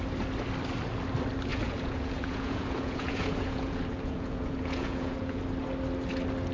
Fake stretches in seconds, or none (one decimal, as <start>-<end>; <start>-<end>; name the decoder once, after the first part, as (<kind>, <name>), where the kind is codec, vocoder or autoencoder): 1.5-5.4 (vocoder, Vocos)